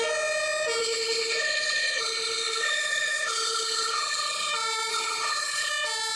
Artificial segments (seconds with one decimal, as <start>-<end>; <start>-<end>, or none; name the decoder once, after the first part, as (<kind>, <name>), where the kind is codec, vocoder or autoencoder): 0.8-4.5 (codec, HILCodec); 4.9-5.7